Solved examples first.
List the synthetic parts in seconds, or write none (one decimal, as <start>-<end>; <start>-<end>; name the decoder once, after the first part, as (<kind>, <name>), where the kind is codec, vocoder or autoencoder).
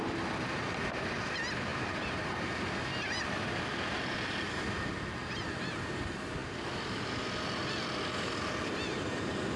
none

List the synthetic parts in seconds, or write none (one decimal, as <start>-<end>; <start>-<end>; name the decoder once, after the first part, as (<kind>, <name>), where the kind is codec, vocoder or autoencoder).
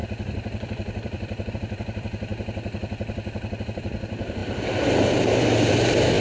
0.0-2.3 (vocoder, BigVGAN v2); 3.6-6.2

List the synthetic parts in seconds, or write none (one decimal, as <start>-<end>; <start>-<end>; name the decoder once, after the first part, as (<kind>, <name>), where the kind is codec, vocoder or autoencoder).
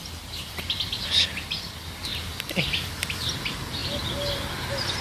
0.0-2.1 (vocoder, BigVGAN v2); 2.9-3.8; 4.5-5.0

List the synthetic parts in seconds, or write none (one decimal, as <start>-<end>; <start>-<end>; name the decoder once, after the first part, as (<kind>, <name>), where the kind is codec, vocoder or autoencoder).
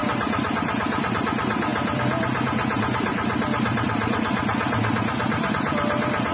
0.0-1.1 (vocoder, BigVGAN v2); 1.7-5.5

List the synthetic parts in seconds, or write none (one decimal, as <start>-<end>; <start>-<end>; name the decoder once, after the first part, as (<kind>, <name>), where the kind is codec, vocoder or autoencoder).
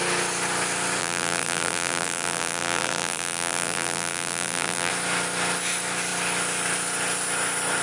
1.0-4.9 (vocoder, BigVGAN v2)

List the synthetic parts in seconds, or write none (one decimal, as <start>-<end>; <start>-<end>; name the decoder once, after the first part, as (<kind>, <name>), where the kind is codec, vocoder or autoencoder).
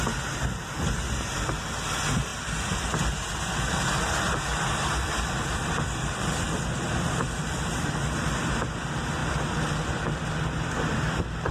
4.5-8.4 (vocoder, BigVGAN v2); 9.2-10.3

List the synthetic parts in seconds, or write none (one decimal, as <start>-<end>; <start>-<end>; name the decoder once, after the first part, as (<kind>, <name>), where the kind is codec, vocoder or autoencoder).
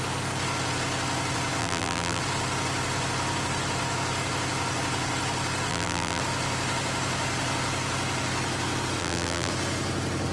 1.6-2.2 (vocoder, BigVGAN v2); 5.7-6.2; 9.0-9.5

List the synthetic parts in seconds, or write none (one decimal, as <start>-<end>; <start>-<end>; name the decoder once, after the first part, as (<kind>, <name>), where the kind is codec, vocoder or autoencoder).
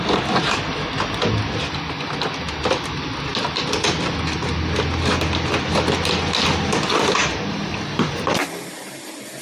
7.2-8.8 (vocoder, BigVGAN v2)